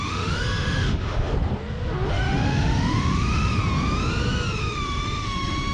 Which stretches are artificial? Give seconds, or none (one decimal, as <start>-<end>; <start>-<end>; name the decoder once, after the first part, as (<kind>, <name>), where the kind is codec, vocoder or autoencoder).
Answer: 0.0-1.3 (autoencoder, DAC-VAE); 2.1-3.6; 4.6-5.7

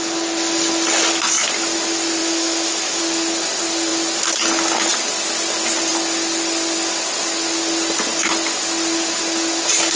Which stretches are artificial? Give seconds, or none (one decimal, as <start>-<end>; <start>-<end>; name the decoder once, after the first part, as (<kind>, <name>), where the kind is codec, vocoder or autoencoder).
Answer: 2.2-3.0 (autoencoder, DAC-VAE)

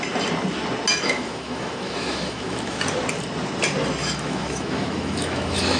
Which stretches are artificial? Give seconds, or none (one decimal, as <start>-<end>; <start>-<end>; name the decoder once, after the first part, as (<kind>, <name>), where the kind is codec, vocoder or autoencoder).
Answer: 0.9-2.8 (autoencoder, DAC-VAE); 4.0-5.8

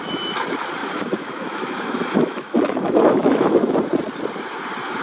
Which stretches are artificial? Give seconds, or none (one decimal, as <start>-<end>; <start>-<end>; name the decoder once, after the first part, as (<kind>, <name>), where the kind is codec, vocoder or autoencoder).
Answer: 0.8-3.7 (autoencoder, DAC-VAE)